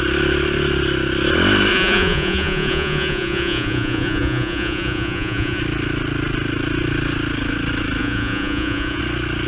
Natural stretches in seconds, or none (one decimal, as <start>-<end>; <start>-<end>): 0.0-1.7; 5.6-8.0; 9.0-9.5

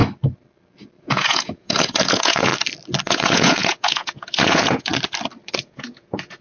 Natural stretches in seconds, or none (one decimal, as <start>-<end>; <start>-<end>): 0.0-1.0; 2.5-3.1; 4.9-5.6

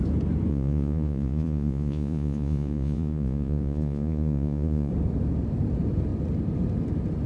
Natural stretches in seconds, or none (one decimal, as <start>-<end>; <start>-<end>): 0.0-0.5; 4.9-7.3